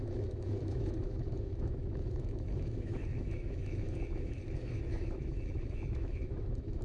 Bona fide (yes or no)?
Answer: no